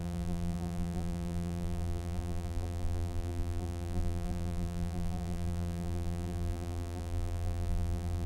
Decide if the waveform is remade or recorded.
remade